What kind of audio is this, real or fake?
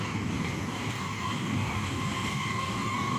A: fake